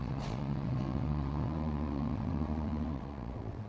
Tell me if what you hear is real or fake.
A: fake